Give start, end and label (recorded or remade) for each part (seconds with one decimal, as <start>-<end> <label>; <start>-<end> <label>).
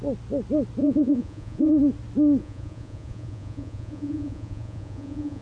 0.0-0.8 recorded; 0.8-1.7 remade; 1.7-2.4 recorded; 2.4-5.4 remade